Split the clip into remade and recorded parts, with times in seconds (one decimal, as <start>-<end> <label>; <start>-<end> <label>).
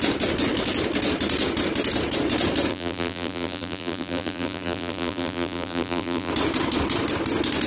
0.0-2.7 recorded; 2.7-6.3 remade; 6.3-7.7 recorded